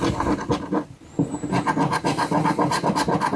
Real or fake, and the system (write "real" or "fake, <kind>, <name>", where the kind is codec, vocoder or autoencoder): fake, vocoder, BigVGAN v2